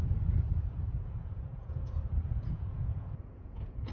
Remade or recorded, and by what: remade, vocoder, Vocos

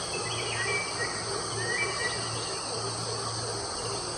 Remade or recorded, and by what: recorded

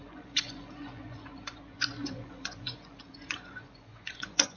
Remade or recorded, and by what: remade, vocoder, Vocos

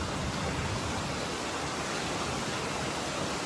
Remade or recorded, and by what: recorded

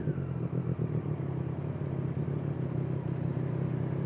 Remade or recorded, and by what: recorded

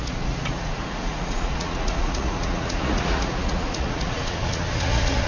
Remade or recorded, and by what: remade, vocoder, Vocos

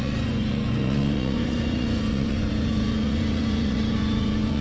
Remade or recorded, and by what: remade, vocoder, Vocos